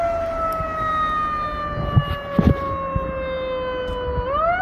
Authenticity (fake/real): real